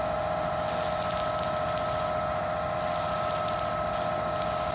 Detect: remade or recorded recorded